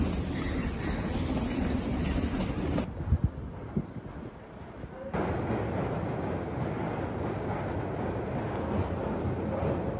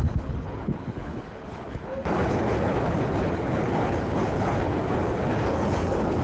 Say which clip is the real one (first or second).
first